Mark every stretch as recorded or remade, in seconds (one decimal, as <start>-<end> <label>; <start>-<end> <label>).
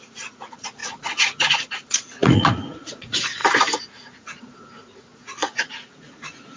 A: 0.0-6.6 remade